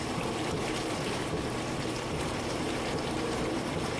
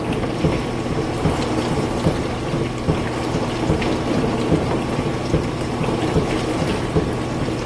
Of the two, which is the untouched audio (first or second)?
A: second